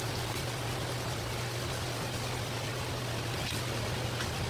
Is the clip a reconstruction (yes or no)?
no